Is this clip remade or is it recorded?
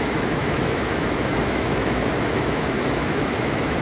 remade